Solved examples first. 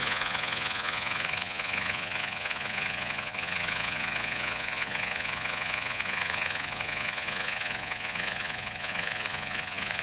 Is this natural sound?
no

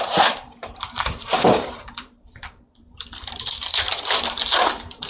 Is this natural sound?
no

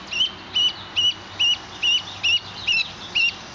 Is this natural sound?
yes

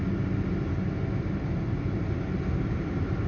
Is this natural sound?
yes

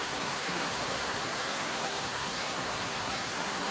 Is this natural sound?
no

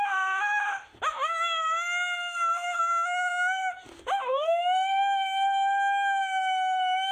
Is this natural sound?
no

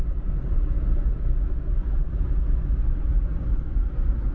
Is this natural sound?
yes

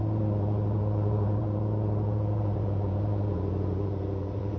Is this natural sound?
no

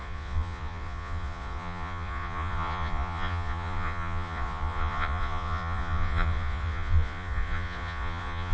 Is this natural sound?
no